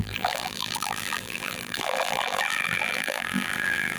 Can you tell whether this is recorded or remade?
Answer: remade